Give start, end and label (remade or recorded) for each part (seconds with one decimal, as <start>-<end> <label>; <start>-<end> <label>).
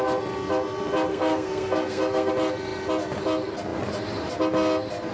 0.0-1.1 recorded; 1.1-2.3 remade; 2.3-5.1 recorded